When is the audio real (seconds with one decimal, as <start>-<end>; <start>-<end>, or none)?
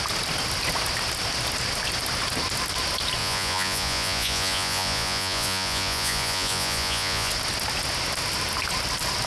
0.0-3.2; 7.3-9.3